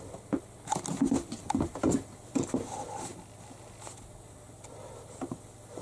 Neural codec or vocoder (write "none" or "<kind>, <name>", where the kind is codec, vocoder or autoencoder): none